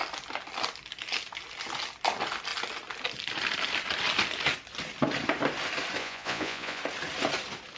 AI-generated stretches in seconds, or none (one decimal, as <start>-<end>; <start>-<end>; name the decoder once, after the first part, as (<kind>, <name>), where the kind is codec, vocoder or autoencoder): 6.0-6.8 (vocoder, Vocos)